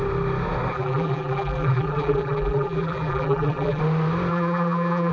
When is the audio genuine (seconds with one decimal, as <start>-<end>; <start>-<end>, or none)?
0.0-0.7; 3.8-4.3